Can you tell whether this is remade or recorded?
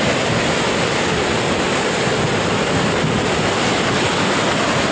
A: recorded